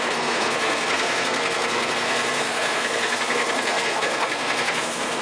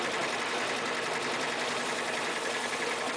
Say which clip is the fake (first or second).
first